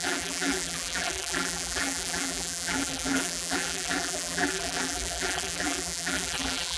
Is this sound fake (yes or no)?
yes